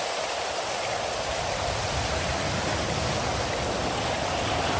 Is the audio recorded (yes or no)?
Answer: yes